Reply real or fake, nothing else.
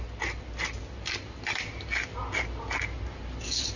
real